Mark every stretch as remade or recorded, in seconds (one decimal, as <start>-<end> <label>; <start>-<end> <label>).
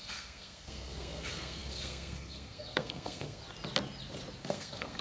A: 0.0-3.4 remade; 3.4-4.4 recorded; 4.4-5.0 remade